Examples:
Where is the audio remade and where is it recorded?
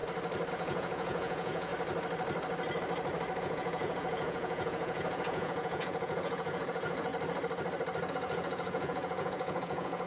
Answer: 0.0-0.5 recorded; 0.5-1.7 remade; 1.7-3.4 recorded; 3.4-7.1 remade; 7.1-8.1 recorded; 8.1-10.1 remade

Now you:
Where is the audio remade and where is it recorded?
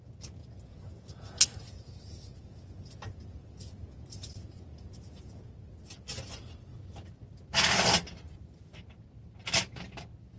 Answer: 0.0-0.4 recorded; 0.4-5.5 remade; 5.5-10.4 recorded